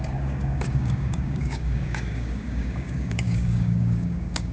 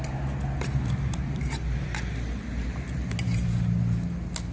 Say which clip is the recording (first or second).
second